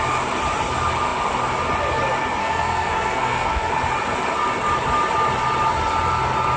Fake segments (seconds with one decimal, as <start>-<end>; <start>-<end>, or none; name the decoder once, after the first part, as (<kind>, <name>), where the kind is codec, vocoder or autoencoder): 2.4-3.7 (codec, SNAC)

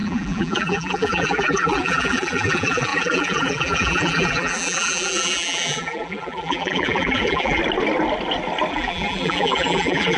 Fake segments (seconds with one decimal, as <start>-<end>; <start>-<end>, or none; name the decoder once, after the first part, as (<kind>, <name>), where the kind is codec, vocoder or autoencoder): 0.0-7.6 (vocoder, BigVGAN v2); 8.7-10.2

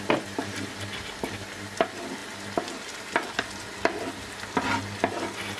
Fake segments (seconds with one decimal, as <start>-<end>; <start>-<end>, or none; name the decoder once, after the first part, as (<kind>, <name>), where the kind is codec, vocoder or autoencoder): none

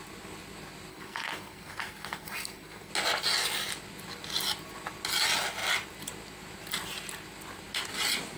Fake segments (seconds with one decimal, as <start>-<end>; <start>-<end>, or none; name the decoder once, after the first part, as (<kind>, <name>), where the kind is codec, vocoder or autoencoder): 0.9-2.9 (codec, SNAC)

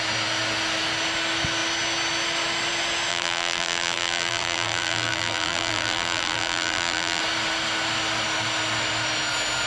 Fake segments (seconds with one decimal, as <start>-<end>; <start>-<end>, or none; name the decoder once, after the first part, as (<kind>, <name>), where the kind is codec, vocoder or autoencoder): 3.1-7.2 (vocoder, BigVGAN v2)

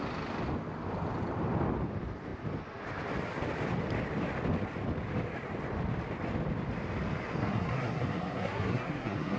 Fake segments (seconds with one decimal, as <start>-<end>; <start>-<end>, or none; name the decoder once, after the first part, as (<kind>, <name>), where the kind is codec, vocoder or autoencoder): 7.4-9.4 (codec, SNAC)